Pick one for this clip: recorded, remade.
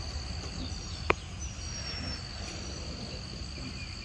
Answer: recorded